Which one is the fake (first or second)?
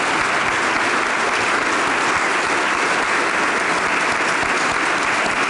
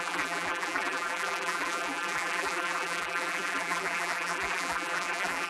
second